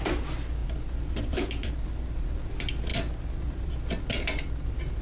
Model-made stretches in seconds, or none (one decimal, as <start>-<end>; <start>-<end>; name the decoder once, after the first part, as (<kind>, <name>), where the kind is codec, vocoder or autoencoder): 0.6-1.7 (vocoder, BigVGAN v2); 2.9-3.7